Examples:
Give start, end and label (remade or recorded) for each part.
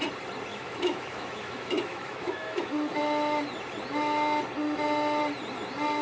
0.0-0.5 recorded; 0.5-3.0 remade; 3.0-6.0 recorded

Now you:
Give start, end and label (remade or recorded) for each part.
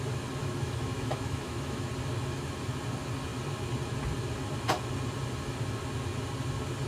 0.0-0.4 recorded; 0.4-1.9 remade; 1.9-6.9 recorded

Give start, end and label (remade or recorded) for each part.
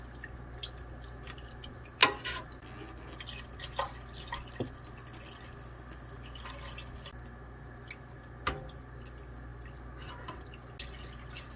0.0-11.6 recorded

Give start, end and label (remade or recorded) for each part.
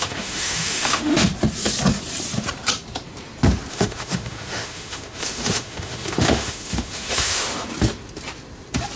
0.0-1.3 remade; 1.3-3.7 recorded; 3.7-7.5 remade; 7.5-9.0 recorded